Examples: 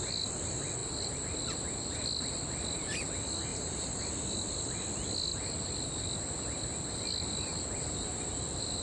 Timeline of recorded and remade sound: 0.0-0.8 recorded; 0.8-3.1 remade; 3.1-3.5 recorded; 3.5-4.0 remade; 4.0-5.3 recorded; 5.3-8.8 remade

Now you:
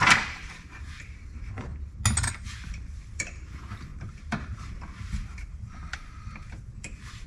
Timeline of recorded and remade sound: 0.0-1.7 remade; 1.7-2.3 recorded; 2.3-7.3 remade

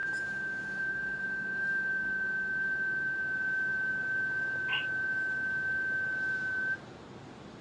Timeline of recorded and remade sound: 0.0-7.6 recorded

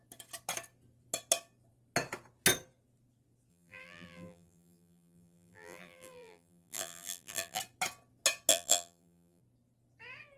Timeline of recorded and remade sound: 0.0-3.5 recorded; 3.5-7.6 remade; 7.6-8.5 recorded; 8.5-9.4 remade; 9.4-10.4 recorded

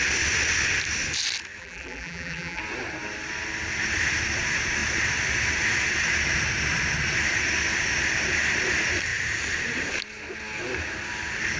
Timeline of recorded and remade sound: 0.0-1.6 recorded; 1.6-2.6 remade; 2.6-11.6 recorded

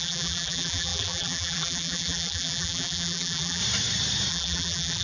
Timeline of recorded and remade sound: 0.0-3.6 remade; 3.6-4.3 recorded; 4.3-5.0 remade

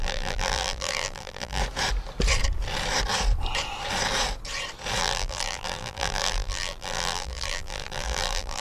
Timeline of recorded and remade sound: 0.0-1.6 remade; 1.6-5.0 recorded; 5.0-8.6 remade